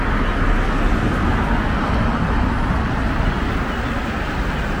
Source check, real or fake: real